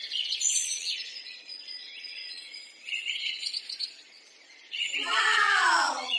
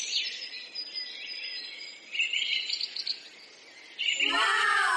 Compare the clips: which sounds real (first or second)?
second